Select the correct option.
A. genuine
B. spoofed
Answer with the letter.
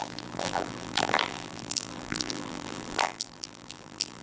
B